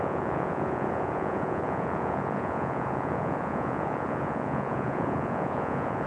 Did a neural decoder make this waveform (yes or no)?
yes